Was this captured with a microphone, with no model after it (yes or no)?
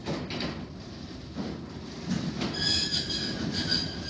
yes